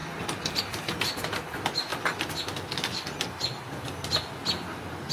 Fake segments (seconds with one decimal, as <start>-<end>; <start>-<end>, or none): none